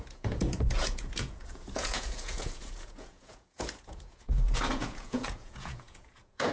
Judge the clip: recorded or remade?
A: remade